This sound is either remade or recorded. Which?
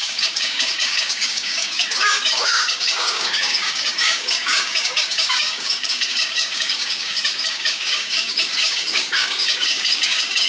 remade